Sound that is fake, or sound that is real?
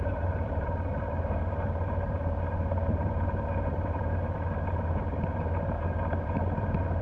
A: fake